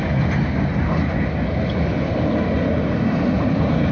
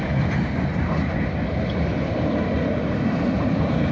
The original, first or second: first